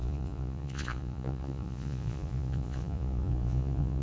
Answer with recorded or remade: remade